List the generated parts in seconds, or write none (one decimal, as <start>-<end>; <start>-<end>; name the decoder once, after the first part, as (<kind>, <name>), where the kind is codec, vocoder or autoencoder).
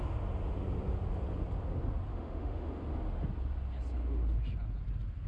2.1-2.8 (autoencoder, DAC-VAE)